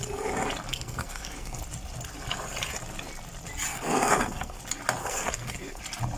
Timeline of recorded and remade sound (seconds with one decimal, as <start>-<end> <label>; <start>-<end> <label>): 0.0-0.7 recorded; 0.7-1.6 remade; 1.6-3.7 recorded; 3.7-4.6 remade; 4.6-5.0 recorded; 5.0-5.8 remade; 5.8-6.2 recorded